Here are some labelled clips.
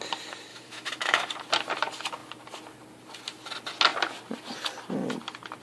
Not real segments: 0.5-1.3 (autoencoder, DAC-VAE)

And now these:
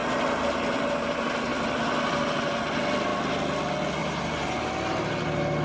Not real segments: 4.0-4.7 (vocoder, BigVGAN v2)

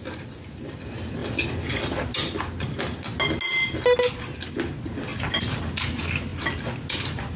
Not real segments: none

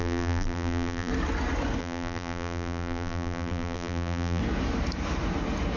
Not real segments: 0.0-1.1 (vocoder, BigVGAN v2); 1.8-4.4

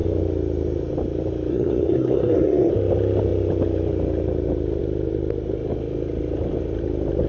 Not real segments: 1.5-2.7 (codec, SNAC)

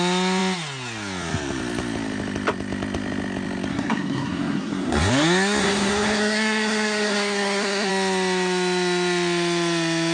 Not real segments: 3.7-5.1 (codec, SNAC); 5.6-7.9